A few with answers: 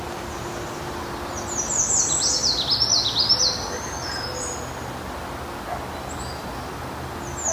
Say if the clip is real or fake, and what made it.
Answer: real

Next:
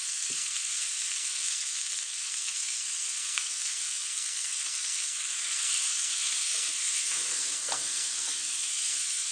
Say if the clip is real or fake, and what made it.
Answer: fake, codec, SNAC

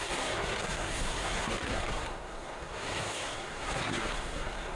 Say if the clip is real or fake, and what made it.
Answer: fake, codec, SNAC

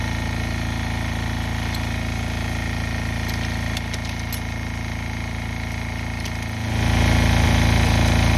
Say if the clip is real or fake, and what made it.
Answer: real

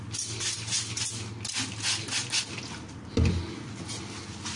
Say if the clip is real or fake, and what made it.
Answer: real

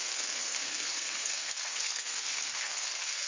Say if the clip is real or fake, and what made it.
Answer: fake, codec, SNAC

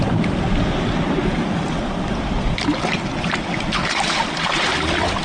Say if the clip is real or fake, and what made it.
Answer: real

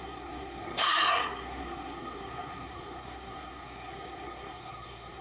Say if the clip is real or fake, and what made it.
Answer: fake, codec, SNAC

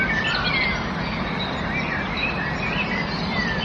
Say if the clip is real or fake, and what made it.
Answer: real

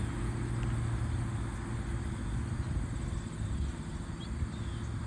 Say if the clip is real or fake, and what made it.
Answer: real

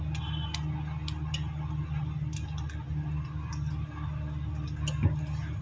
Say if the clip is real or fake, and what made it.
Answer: real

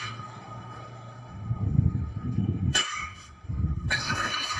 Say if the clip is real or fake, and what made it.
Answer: fake, codec, SNAC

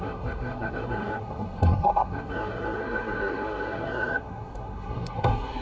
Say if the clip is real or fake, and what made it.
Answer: fake, codec, SNAC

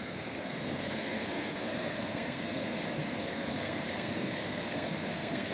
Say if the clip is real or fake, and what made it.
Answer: fake, codec, SNAC